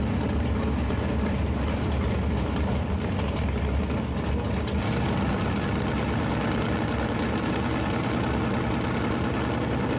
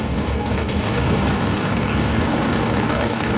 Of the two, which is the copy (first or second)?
second